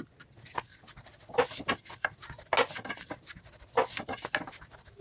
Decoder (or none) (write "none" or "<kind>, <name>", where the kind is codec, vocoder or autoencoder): none